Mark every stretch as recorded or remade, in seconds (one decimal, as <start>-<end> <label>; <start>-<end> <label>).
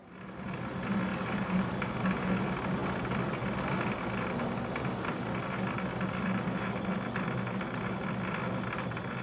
0.0-1.1 recorded; 1.1-1.7 remade; 1.7-9.2 recorded